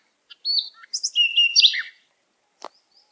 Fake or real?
real